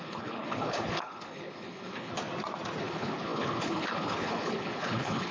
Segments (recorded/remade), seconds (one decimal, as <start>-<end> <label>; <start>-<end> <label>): 0.0-2.1 remade; 2.1-2.8 recorded; 2.8-5.3 remade